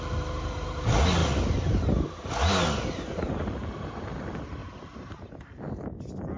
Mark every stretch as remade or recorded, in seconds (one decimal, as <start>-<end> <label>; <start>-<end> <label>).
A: 0.0-6.4 recorded